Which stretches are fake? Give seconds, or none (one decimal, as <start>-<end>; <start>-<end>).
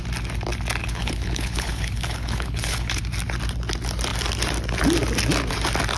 0.8-3.0